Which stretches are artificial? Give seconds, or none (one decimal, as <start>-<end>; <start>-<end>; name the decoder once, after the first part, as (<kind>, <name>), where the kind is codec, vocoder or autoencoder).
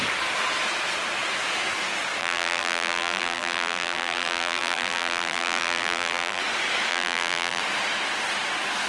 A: 2.2-6.4 (vocoder, BigVGAN v2); 6.9-7.6